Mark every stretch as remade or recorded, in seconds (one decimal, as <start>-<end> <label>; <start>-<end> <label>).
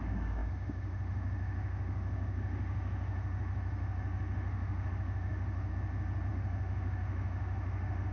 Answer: 0.0-5.7 remade; 5.7-6.3 recorded; 6.3-8.1 remade